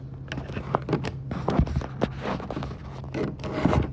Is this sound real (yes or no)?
yes